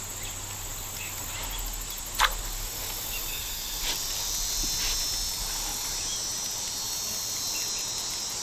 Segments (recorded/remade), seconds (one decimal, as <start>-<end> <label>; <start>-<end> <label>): 0.0-3.3 recorded; 3.3-3.8 remade; 3.8-8.4 recorded